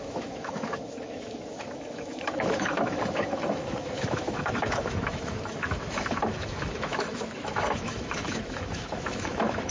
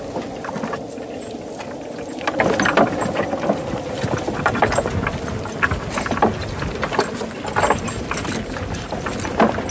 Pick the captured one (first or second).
second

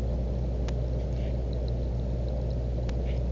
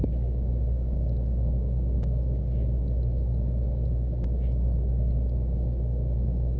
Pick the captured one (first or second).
first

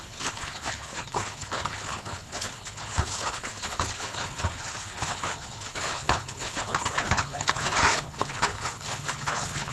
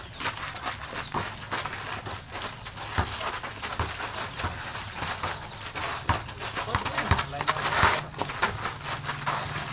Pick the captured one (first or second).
second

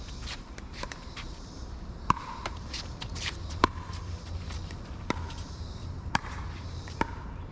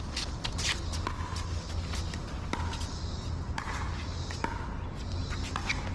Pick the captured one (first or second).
second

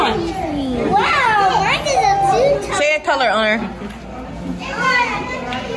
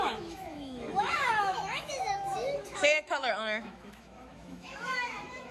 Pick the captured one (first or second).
first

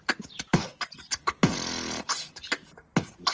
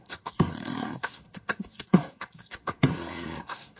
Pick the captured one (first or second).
first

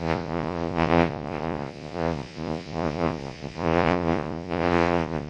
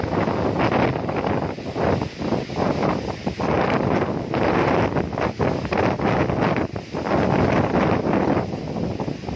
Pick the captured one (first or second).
second